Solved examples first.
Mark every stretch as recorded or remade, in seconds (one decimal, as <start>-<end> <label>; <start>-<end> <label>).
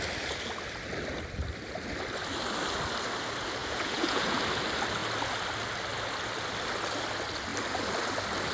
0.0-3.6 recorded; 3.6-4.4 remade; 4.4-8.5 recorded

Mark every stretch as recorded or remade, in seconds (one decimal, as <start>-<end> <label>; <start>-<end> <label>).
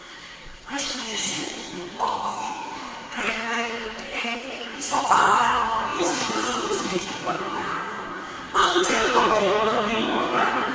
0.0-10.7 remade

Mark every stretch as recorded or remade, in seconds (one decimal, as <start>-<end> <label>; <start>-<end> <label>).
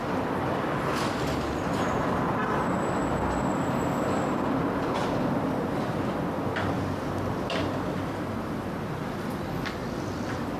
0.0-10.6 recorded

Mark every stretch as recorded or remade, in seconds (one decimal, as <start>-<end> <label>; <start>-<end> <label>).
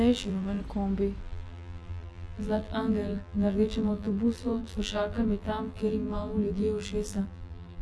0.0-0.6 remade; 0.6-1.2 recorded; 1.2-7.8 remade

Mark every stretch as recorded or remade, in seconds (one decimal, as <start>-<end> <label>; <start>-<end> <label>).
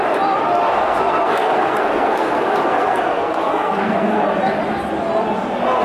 0.0-0.7 recorded; 0.7-4.2 remade; 4.2-5.8 recorded